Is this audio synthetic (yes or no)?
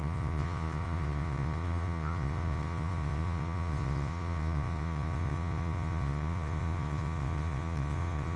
yes